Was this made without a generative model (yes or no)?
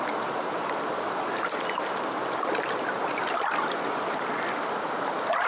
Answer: yes